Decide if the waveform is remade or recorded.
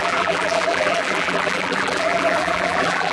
remade